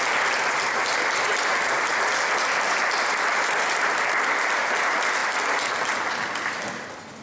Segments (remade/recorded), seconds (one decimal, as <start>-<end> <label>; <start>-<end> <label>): 0.0-7.2 recorded